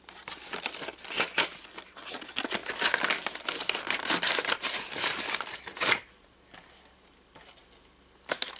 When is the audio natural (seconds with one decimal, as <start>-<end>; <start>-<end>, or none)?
0.0-8.6